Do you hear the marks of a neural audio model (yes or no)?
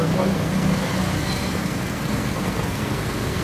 yes